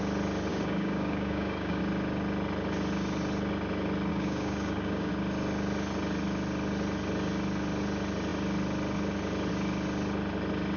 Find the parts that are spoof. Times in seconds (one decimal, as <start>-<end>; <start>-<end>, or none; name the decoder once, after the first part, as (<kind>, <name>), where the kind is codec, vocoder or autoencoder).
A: 0.5-1.8 (codec, DAC); 4.1-5.1